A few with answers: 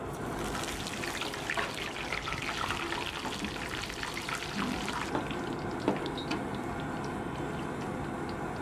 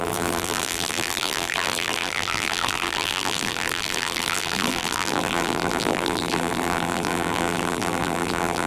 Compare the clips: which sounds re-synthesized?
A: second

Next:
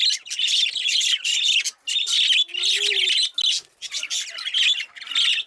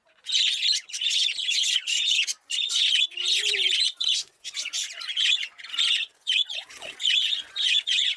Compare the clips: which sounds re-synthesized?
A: second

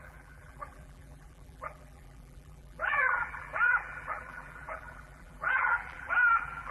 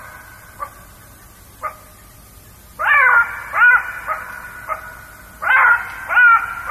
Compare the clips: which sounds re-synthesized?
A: first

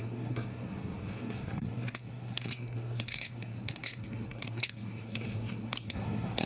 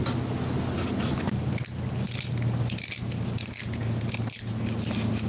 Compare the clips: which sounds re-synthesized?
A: first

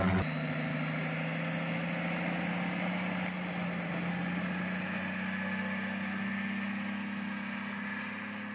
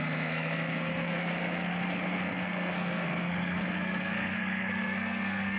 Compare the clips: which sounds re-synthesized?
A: second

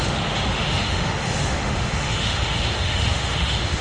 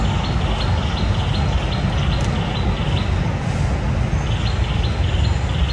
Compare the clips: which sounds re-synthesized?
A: first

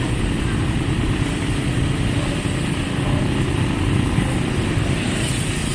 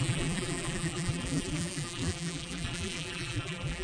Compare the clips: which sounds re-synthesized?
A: second